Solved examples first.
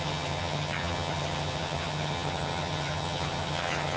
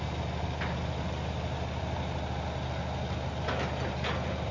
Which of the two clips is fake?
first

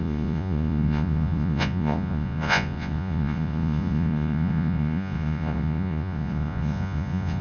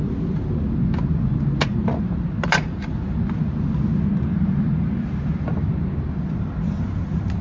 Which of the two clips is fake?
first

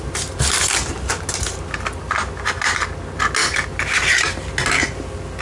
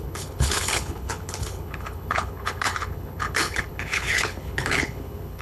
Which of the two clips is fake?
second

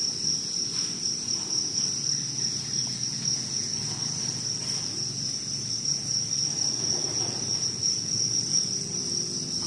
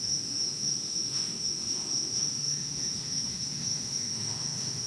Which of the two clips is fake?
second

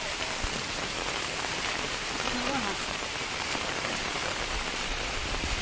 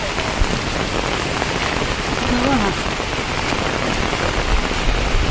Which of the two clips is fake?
first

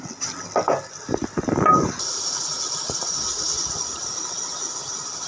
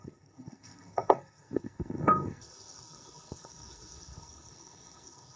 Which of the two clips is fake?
second